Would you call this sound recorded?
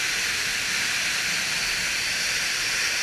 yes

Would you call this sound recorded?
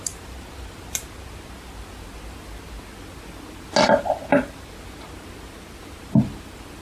yes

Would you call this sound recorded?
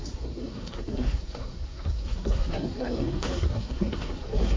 no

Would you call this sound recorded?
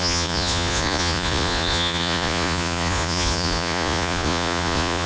no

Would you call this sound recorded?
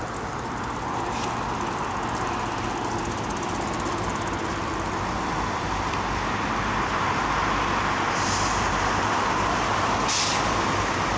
yes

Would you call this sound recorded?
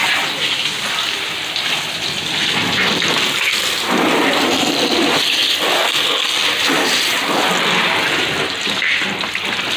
yes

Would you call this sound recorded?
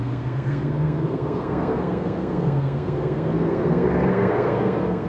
no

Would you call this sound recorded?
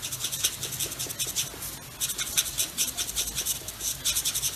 yes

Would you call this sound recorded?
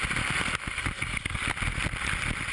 yes